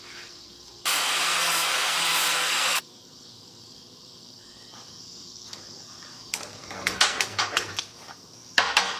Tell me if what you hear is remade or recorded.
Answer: remade